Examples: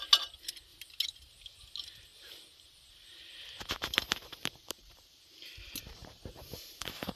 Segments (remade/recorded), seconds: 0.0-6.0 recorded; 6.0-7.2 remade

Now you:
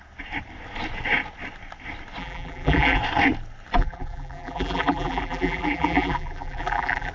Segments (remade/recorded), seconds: 0.0-2.2 recorded; 2.2-3.0 remade; 3.0-3.8 recorded; 3.8-7.1 remade

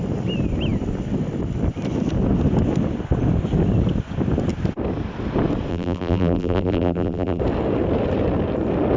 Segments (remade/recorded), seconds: 0.0-5.7 recorded; 5.7-7.4 remade; 7.4-9.0 recorded